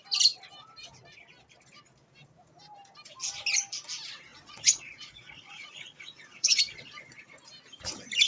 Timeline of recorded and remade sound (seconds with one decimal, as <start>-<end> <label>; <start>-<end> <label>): 0.0-4.3 recorded; 4.3-7.2 remade; 7.2-8.3 recorded